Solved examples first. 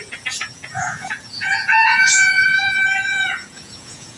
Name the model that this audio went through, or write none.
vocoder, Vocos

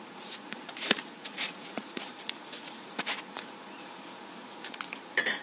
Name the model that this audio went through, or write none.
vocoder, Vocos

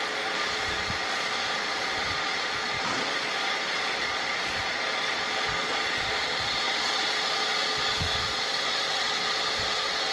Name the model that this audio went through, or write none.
vocoder, Vocos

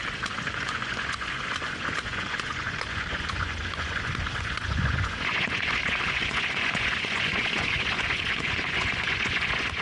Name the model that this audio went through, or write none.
vocoder, Vocos